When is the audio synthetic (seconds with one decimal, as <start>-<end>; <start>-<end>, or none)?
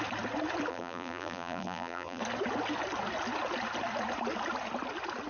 0.7-2.2